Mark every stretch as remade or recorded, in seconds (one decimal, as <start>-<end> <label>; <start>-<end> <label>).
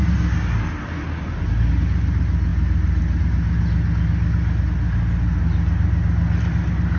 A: 0.0-7.0 recorded